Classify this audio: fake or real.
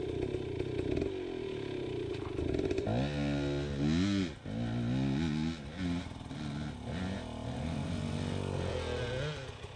real